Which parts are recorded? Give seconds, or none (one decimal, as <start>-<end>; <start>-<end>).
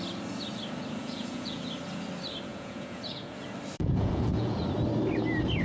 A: 0.0-1.0; 1.6-2.5; 3.3-3.8; 4.6-5.6